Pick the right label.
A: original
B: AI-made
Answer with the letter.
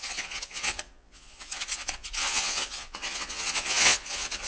B